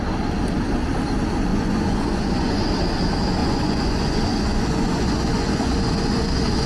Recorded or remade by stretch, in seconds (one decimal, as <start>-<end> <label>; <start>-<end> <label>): 0.0-1.5 recorded; 1.5-2.7 remade; 2.7-3.4 recorded; 3.4-6.7 remade